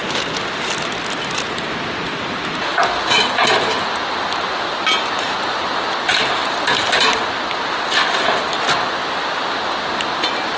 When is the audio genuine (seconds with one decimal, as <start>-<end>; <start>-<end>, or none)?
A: 0.0-10.6